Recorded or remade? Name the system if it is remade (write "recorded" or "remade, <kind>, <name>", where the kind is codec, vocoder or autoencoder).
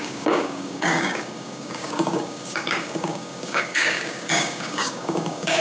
remade, codec, DAC